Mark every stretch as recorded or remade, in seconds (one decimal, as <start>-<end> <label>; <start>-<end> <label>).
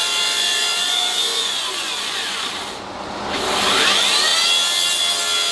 0.0-2.5 remade; 2.5-5.5 recorded